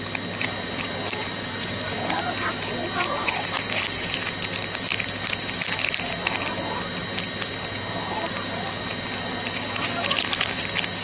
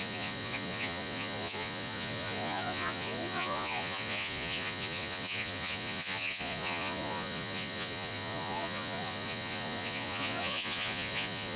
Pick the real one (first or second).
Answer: first